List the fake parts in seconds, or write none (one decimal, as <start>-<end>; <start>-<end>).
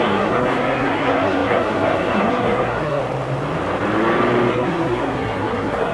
0.0-3.0; 4.5-5.9